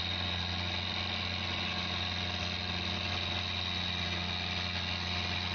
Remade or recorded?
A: recorded